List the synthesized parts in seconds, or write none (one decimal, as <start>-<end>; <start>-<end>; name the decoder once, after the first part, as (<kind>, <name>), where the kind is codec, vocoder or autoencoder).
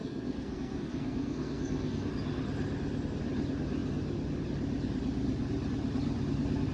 0.0-2.1 (codec, SNAC)